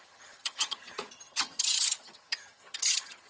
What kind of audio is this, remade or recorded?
remade